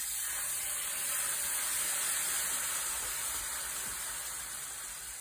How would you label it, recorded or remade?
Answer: recorded